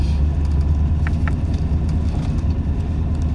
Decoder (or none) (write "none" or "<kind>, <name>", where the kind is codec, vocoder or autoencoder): none